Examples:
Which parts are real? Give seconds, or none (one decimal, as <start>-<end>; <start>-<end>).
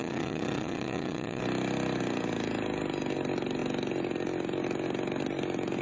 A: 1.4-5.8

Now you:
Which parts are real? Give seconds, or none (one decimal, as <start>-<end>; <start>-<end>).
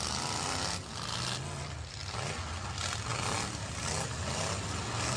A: 0.0-5.2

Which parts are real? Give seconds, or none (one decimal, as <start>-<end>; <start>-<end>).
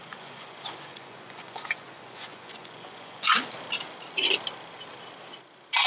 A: 3.5-5.9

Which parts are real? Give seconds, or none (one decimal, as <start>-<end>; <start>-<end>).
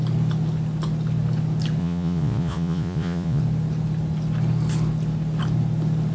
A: 0.0-1.8; 3.4-6.1